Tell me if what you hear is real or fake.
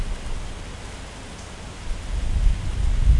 real